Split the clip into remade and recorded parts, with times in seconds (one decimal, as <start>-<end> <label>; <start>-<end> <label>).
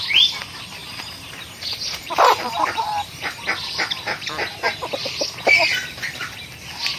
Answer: 0.0-0.8 recorded; 0.8-5.0 remade; 5.0-7.0 recorded